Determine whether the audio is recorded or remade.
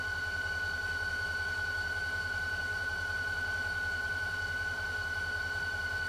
remade